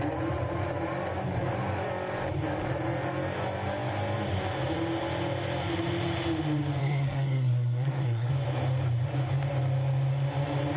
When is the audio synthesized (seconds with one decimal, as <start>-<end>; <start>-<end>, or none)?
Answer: 6.8-8.3